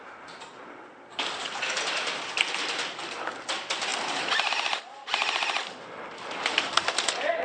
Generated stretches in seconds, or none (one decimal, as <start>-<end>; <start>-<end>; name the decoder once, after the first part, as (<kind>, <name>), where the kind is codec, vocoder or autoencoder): none